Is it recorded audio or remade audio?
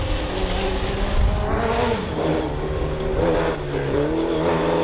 recorded